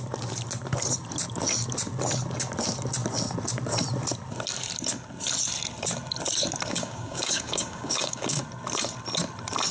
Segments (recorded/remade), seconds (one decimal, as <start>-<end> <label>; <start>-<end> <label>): 0.0-6.7 recorded; 6.7-8.4 remade; 8.4-9.7 recorded